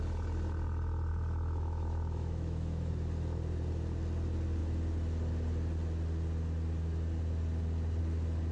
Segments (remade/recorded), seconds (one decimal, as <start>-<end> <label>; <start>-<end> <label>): 0.0-1.1 recorded; 1.1-2.9 remade; 2.9-8.5 recorded